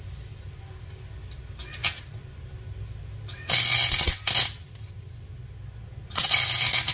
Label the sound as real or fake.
real